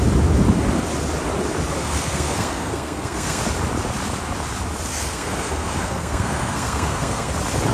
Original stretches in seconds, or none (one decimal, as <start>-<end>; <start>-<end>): 0.0-1.8; 3.4-4.9; 7.3-7.7

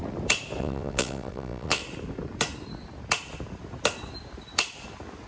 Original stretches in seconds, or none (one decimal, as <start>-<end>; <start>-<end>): 0.0-0.6; 1.8-5.3

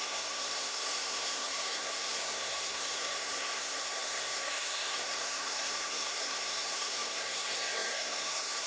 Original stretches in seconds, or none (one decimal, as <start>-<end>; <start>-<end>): none

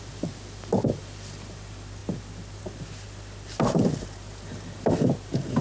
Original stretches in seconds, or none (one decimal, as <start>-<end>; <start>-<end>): 0.0-5.6